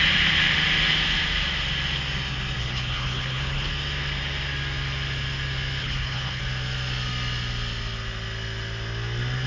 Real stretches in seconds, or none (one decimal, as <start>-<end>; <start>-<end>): 0.0-2.6; 3.7-5.8; 6.4-9.5